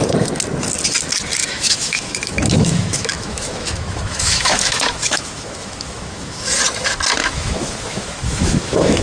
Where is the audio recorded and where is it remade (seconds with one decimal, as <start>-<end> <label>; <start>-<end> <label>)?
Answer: 0.0-1.4 recorded; 1.4-6.5 remade; 6.5-7.2 recorded; 7.2-9.0 remade